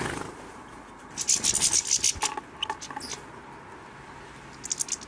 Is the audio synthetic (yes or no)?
no